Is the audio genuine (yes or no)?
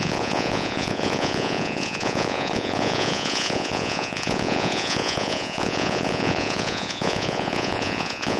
no